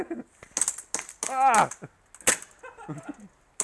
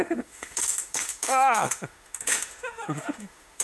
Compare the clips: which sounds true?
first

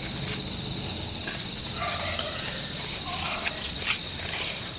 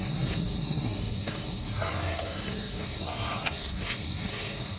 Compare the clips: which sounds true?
first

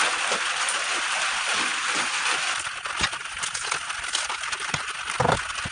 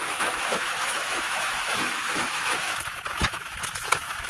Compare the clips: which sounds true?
first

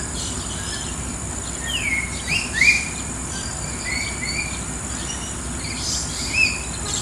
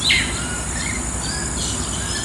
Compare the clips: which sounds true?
second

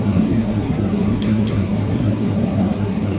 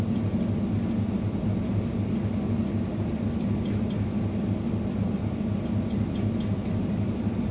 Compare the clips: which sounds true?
second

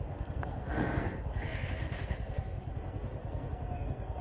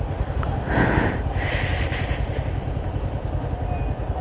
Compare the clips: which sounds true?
second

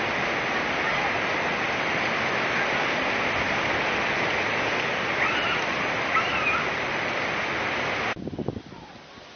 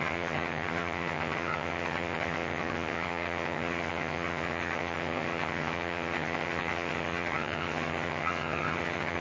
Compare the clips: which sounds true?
first